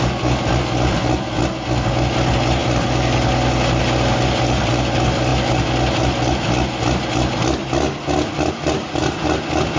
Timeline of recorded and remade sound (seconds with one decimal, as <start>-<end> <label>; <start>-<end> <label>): 0.0-9.8 recorded